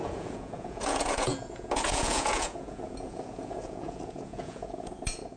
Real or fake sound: fake